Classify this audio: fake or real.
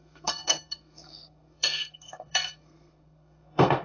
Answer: fake